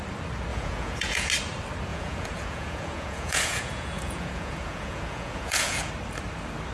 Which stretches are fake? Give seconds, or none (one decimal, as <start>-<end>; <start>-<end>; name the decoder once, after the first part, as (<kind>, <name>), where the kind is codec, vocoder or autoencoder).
0.5-1.3 (vocoder, Vocos); 1.9-5.9

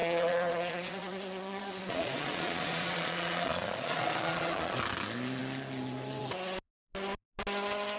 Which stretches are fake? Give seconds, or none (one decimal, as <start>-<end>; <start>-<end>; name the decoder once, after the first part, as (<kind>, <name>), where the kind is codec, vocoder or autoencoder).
0.0-4.8 (vocoder, Vocos)

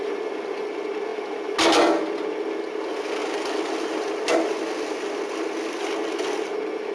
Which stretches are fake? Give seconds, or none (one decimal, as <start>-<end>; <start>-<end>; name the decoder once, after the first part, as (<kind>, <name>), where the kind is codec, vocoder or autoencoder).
none

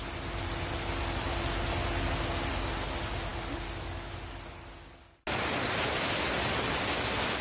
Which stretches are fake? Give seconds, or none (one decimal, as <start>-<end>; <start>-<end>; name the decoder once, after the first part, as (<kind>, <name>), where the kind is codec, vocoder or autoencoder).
none

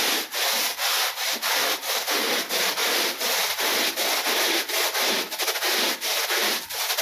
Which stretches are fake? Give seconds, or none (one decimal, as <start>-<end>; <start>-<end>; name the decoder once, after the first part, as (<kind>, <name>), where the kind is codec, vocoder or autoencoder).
none

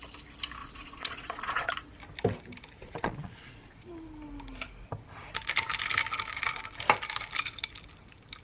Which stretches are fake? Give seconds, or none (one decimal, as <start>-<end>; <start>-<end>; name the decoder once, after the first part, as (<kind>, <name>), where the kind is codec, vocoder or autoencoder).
0.6-1.7 (vocoder, Vocos); 2.8-3.9

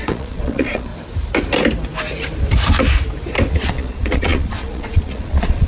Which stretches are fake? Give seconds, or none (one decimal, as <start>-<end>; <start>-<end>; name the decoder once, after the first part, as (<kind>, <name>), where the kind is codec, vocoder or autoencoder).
0.0-0.9 (vocoder, Vocos); 3.5-5.7